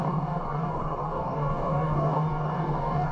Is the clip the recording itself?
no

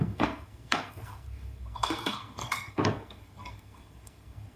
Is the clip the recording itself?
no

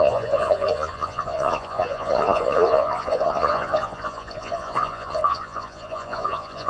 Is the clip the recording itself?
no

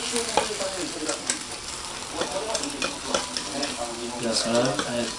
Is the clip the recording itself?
yes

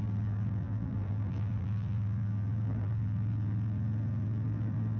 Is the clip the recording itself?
no